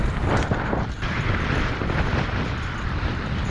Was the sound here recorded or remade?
remade